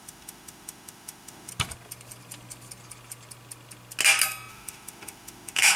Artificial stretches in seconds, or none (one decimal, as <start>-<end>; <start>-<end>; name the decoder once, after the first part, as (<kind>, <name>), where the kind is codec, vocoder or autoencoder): 0.0-1.5 (autoencoder, DAC-VAE); 4.5-5.8